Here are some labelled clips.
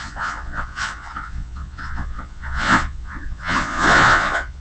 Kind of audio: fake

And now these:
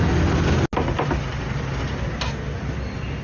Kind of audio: real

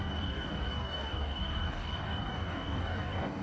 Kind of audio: fake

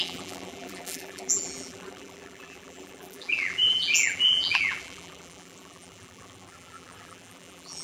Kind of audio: fake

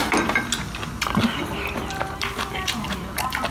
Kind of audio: real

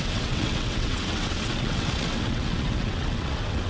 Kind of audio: fake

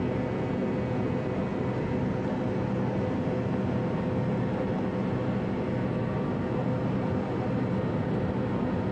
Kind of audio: real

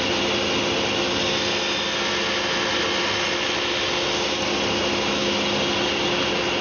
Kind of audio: real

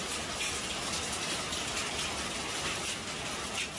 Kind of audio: real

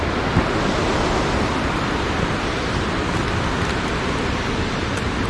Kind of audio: real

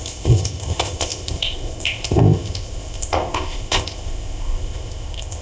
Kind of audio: fake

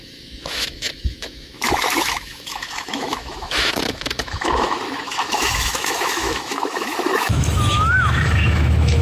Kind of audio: fake